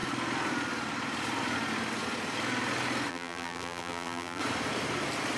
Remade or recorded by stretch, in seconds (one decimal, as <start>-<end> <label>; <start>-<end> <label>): 0.0-3.1 recorded; 3.1-4.4 remade; 4.4-5.4 recorded